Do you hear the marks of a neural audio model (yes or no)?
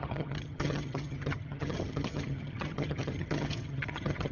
yes